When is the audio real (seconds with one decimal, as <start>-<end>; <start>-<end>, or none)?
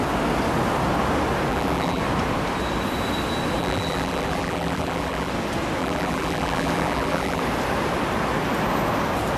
0.0-1.5; 2.0-3.6; 5.3-5.8; 7.4-9.4